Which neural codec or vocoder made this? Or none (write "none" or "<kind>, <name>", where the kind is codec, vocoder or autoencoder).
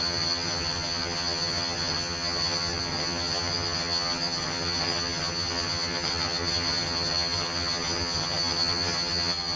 vocoder, HiFi-GAN